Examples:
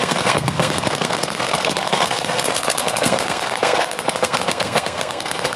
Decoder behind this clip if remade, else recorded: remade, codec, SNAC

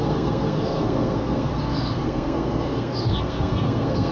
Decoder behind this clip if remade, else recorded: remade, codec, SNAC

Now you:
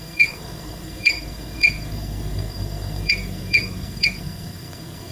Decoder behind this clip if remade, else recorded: remade, codec, SNAC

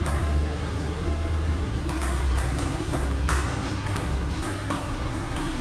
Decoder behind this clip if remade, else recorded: remade, codec, SNAC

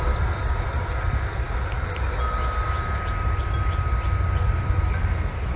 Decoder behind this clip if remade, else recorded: recorded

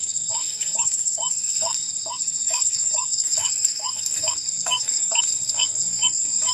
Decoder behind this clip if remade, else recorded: remade, codec, SNAC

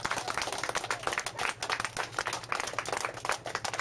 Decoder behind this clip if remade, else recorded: recorded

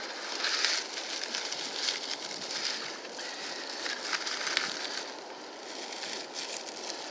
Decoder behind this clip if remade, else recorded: recorded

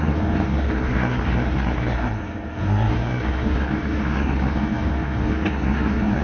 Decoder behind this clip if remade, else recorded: remade, codec, SNAC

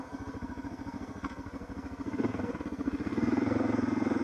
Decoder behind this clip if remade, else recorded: remade, codec, SNAC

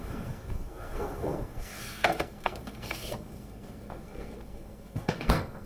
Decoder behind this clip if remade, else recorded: remade, codec, SNAC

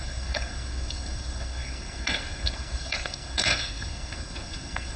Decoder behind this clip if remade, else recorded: remade, codec, SNAC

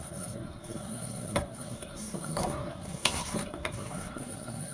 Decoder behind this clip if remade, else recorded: remade, codec, SNAC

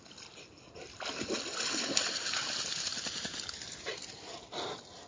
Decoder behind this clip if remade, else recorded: recorded